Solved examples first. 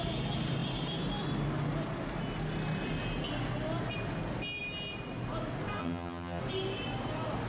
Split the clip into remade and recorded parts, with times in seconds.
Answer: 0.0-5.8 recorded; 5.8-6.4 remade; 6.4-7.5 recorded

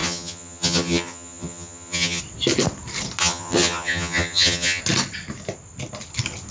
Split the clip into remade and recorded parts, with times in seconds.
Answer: 0.0-2.2 remade; 2.2-3.2 recorded; 3.2-4.8 remade; 4.8-6.5 recorded

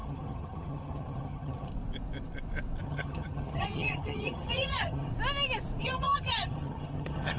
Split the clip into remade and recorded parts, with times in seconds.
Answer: 0.0-1.7 remade; 1.7-2.8 recorded; 2.8-5.1 remade; 5.1-5.8 recorded; 5.8-7.4 remade

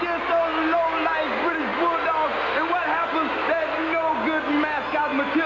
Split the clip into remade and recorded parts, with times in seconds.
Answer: 0.0-5.5 recorded

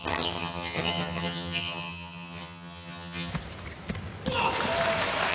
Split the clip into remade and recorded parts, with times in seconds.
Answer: 0.0-3.3 remade; 3.3-5.3 recorded

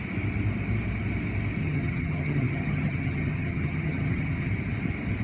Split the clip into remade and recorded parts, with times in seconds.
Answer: 0.0-1.6 recorded; 1.6-4.5 remade; 4.5-5.2 recorded

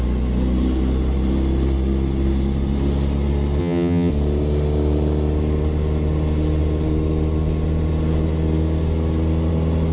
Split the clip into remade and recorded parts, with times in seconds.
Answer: 0.0-3.6 recorded; 3.6-4.1 remade; 4.1-9.9 recorded